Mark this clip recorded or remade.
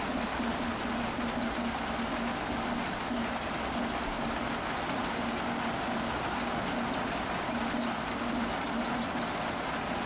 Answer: recorded